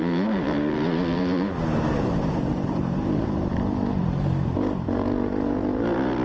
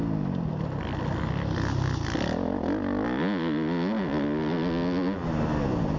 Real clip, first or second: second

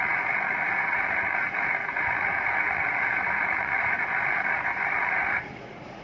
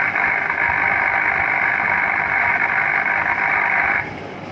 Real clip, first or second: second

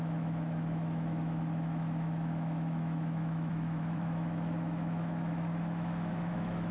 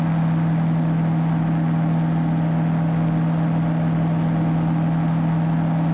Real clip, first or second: second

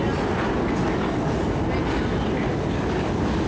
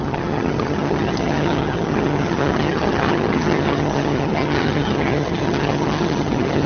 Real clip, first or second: first